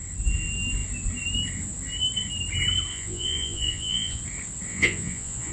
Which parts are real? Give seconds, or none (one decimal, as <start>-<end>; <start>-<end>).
0.0-2.9; 4.2-4.7